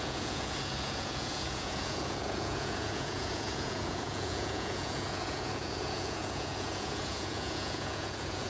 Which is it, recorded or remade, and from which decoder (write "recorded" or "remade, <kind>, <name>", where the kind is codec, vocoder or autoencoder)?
remade, vocoder, Vocos